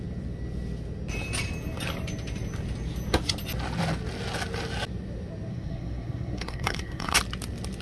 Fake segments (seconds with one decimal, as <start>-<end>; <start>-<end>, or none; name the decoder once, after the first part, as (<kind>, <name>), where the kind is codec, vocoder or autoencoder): 5.5-7.2 (codec, SNAC)